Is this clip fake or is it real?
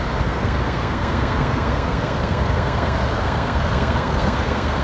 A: fake